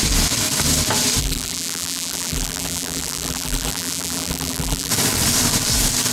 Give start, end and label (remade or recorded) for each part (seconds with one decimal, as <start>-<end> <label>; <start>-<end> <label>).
0.0-1.2 recorded; 1.2-4.9 remade; 4.9-6.1 recorded